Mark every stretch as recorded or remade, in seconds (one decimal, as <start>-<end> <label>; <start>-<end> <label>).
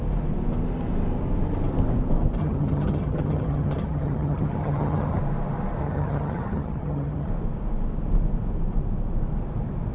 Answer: 0.0-2.4 recorded; 2.4-5.2 remade; 5.2-5.8 recorded; 5.8-7.3 remade; 7.3-9.9 recorded